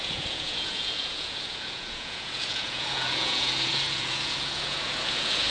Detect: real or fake fake